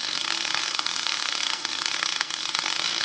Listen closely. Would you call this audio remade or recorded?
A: remade